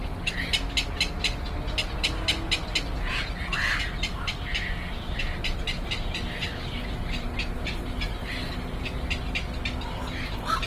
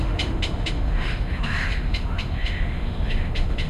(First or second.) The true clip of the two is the first